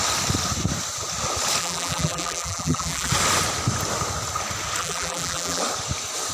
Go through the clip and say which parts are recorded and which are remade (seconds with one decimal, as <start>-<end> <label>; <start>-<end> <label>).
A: 0.0-1.6 recorded; 1.6-3.1 remade; 3.1-4.8 recorded; 4.8-5.6 remade; 5.6-6.3 recorded